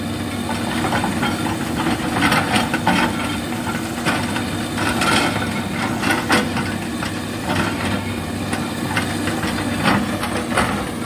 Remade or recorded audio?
recorded